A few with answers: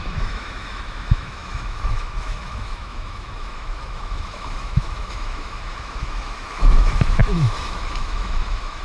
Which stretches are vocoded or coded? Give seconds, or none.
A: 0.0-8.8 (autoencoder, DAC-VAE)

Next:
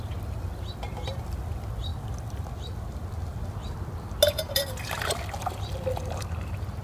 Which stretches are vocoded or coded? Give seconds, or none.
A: none

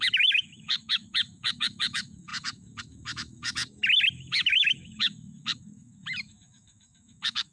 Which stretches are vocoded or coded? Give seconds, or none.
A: 0.0-3.6 (autoencoder, DAC-VAE); 4.1-7.5

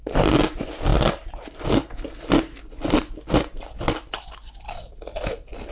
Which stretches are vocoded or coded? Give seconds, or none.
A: none

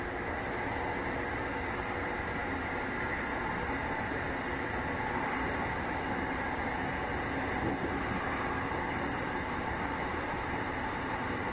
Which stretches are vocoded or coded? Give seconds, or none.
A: none